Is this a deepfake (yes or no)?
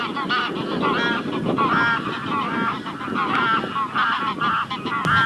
no